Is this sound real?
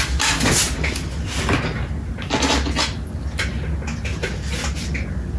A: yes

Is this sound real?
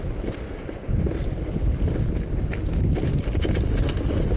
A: yes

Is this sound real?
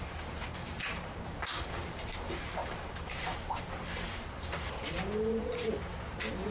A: no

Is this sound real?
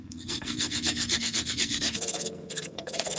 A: no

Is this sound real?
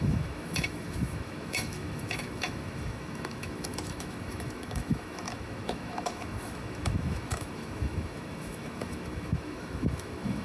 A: no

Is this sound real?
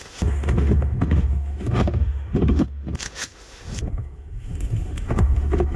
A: no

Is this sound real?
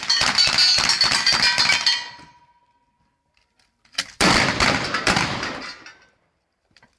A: no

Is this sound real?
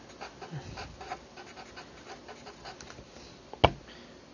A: yes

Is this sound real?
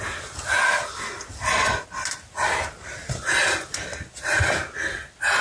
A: yes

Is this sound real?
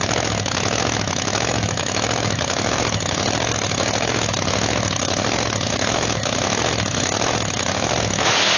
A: no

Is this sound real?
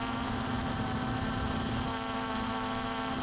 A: yes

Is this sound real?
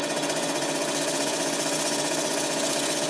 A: no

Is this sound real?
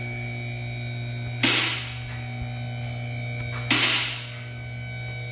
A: yes